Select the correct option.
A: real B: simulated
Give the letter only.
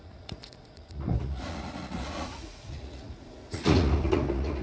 B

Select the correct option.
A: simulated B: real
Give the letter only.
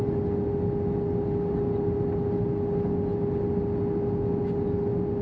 B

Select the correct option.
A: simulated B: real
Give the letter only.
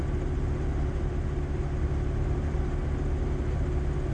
B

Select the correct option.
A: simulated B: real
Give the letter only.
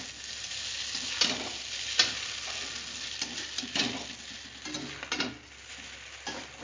B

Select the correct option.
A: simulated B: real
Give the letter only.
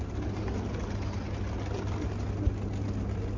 B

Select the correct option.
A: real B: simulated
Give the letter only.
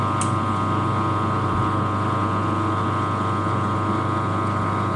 A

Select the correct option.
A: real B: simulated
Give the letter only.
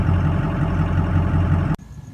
A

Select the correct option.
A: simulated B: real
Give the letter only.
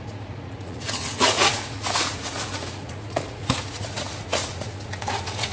A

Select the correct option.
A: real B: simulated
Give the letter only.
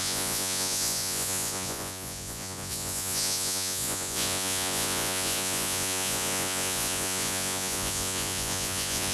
B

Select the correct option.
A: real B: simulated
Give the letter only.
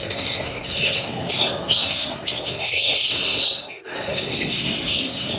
B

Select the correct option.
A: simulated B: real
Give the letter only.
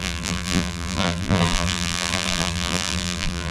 A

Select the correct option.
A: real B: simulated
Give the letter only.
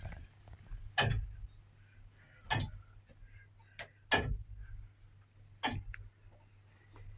A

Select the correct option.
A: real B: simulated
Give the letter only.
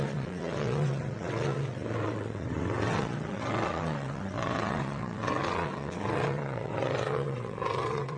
B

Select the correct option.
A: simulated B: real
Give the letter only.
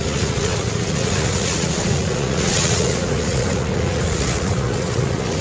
A